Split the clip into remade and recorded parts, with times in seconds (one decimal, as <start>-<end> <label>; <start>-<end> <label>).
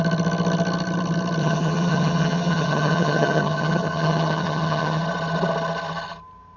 0.0-1.4 recorded; 1.4-5.0 remade; 5.0-6.6 recorded